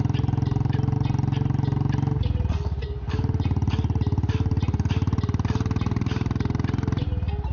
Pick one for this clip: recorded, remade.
recorded